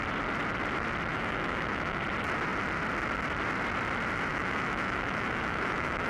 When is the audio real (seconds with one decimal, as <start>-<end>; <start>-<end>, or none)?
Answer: 0.0-1.1; 2.0-4.3